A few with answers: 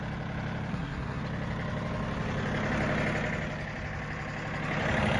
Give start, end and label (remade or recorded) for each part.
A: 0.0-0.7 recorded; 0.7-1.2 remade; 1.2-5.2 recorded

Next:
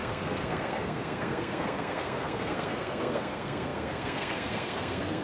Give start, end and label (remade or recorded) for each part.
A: 0.0-5.2 remade